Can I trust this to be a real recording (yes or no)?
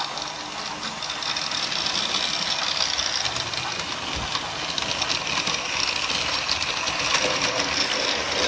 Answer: yes